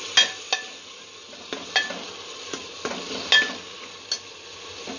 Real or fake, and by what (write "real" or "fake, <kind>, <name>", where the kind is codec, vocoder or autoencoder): real